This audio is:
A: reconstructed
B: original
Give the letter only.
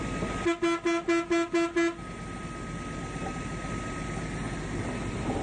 B